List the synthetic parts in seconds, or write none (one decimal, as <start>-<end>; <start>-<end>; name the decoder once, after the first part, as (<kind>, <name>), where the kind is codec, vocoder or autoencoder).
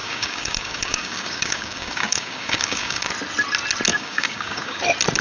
0.0-3.1 (codec, DAC); 3.9-4.8